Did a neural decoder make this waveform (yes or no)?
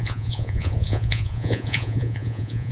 yes